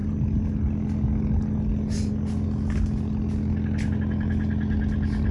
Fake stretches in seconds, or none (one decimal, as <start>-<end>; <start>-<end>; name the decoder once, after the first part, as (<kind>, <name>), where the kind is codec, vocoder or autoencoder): none